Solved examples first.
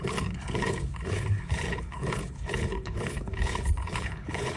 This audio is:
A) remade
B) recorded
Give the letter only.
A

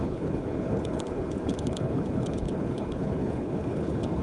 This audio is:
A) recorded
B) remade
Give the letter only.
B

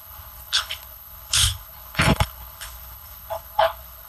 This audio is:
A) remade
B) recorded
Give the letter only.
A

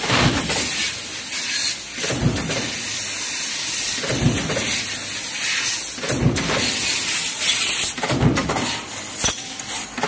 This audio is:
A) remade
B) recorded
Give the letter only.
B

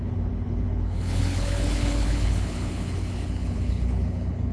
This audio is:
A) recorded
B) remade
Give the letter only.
B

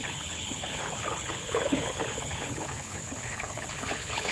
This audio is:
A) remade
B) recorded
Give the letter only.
A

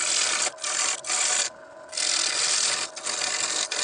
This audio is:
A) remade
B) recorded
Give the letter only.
B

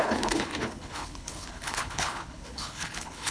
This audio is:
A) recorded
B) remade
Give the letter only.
B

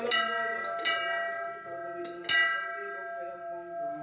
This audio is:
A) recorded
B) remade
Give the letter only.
A